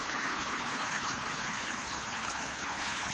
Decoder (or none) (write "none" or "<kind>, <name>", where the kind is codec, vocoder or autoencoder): codec, HILCodec